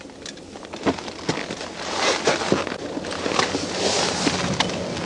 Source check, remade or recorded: recorded